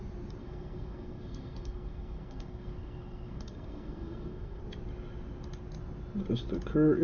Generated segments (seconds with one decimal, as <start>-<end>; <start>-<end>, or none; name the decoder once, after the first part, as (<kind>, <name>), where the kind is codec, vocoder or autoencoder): 0.4-4.6 (codec, SNAC)